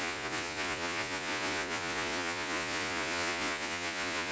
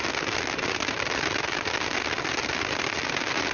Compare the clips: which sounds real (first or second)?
second